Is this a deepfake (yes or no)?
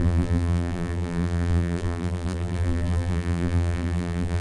yes